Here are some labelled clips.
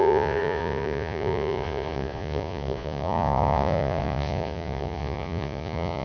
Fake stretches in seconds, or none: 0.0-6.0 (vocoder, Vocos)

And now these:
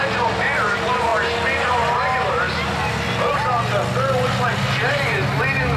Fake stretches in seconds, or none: none

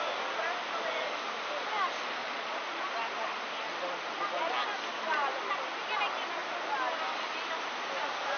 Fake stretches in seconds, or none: 2.2-2.9 (vocoder, Vocos)

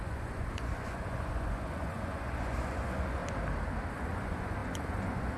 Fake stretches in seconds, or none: 0.0-3.2 (vocoder, Vocos); 3.9-5.4

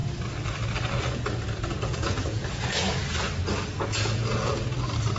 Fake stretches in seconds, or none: 1.8-3.0 (vocoder, Vocos); 3.7-4.2

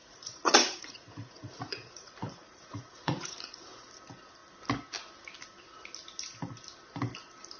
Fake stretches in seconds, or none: 0.0-3.9 (vocoder, Vocos)

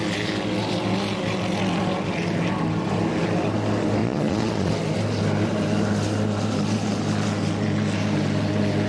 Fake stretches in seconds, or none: 4.0-4.7 (vocoder, Vocos)